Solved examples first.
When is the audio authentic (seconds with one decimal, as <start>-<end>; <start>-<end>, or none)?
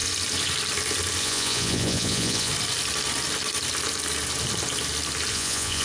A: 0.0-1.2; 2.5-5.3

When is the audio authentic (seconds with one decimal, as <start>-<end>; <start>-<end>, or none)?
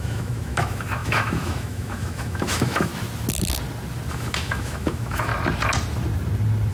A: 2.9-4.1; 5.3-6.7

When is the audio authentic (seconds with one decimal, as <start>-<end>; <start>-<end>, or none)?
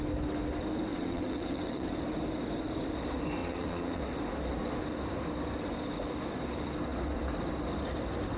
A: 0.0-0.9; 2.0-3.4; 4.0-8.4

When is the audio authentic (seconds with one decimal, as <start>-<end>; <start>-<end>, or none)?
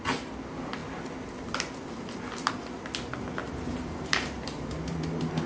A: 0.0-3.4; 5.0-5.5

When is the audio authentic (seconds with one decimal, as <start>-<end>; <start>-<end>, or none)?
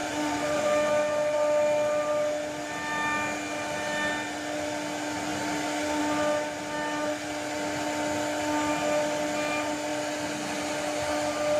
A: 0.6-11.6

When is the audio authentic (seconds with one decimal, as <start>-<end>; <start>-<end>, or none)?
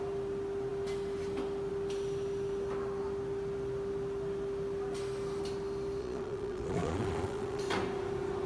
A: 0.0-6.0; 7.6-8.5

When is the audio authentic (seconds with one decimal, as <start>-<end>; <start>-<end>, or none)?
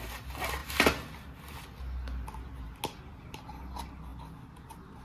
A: 0.0-5.0